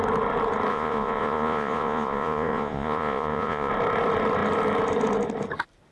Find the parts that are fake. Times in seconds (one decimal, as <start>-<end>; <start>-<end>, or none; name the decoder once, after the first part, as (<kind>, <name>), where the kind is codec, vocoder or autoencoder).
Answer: 0.7-3.7 (vocoder, Vocos)